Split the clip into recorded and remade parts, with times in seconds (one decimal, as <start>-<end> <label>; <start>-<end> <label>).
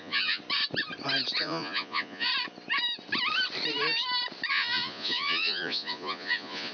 0.0-0.4 remade; 0.4-1.4 recorded; 1.4-2.3 remade; 2.3-4.5 recorded; 4.5-6.7 remade